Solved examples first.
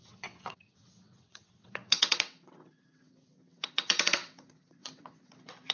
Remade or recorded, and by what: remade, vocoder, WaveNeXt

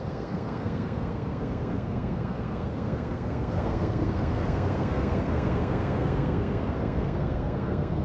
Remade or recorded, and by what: remade, codec, SNAC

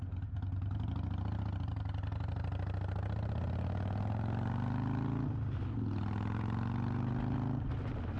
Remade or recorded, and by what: recorded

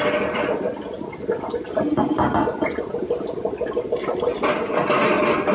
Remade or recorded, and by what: recorded